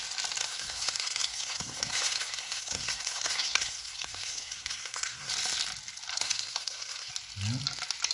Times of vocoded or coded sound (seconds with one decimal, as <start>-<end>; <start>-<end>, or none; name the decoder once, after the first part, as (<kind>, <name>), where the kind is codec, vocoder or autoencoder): 0.4-5.3 (codec, SNAC); 6.1-7.1

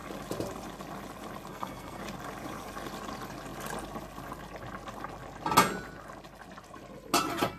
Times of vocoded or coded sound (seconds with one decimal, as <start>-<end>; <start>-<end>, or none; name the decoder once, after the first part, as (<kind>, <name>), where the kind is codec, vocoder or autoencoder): 1.5-2.0 (codec, SNAC)